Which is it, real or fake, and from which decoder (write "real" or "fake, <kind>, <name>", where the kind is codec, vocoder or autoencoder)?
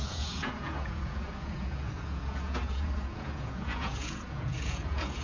fake, vocoder, Vocos